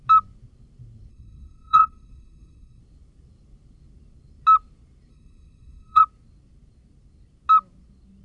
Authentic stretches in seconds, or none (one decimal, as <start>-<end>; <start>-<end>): 0.0-1.1; 2.8-5.1; 6.0-8.2